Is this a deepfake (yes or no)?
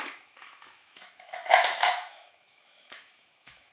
yes